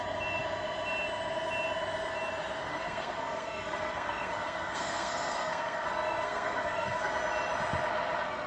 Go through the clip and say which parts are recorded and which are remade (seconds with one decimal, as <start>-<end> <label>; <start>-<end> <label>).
0.0-2.7 recorded; 2.7-7.1 remade; 7.1-8.5 recorded